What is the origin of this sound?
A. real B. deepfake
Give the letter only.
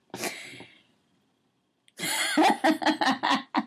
A